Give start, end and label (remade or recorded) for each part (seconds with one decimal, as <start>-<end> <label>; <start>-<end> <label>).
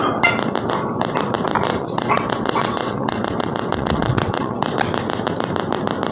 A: 0.0-1.7 recorded; 1.7-4.6 remade; 4.6-6.1 recorded